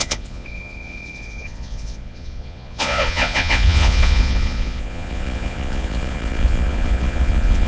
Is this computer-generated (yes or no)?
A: yes